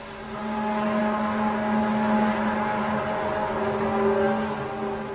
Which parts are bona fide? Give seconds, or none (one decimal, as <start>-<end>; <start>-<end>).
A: 0.0-5.1